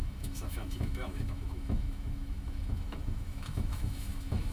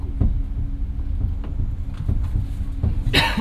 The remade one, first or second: first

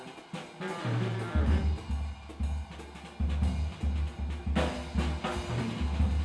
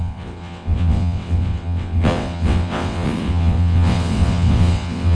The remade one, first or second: second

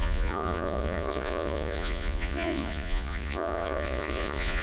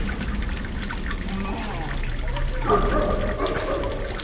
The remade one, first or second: first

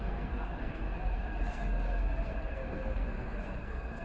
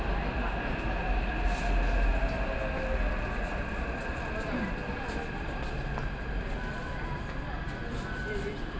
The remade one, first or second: first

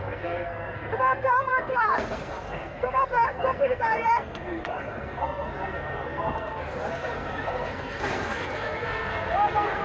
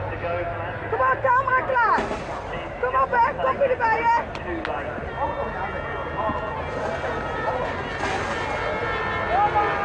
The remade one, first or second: first